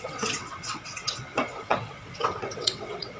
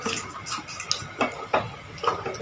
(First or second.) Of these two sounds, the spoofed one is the first